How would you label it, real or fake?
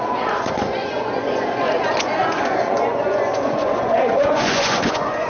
fake